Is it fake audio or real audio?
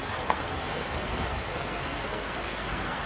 fake